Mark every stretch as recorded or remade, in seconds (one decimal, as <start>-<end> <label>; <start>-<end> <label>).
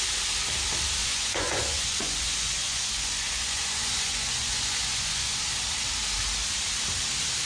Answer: 0.0-1.0 recorded; 1.0-5.4 remade; 5.4-7.5 recorded